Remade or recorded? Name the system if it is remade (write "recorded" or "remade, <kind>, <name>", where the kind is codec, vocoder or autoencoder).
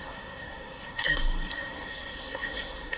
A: remade, codec, SNAC